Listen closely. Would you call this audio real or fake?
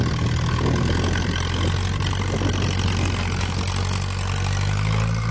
real